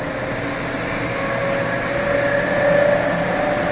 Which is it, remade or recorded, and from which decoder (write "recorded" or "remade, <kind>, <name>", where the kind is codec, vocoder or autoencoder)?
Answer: recorded